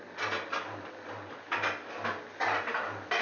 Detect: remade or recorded recorded